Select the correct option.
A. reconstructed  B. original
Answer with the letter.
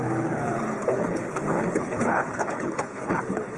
A